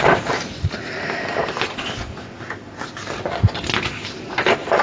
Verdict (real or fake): real